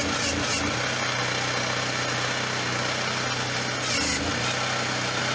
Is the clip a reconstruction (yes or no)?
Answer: no